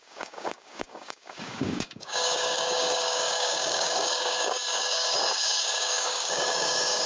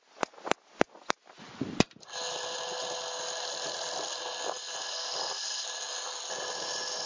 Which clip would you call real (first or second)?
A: second